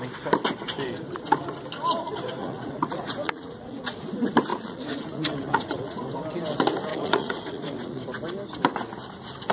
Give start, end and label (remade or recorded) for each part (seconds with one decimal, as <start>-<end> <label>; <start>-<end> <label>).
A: 0.0-2.4 recorded; 2.4-3.8 remade; 3.8-4.5 recorded; 4.5-6.0 remade; 6.0-6.9 recorded; 6.9-8.0 remade; 8.0-9.5 recorded